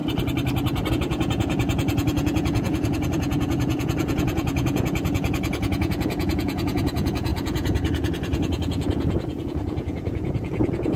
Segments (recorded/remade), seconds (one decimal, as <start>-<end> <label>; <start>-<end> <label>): 0.0-0.9 recorded; 0.9-11.0 remade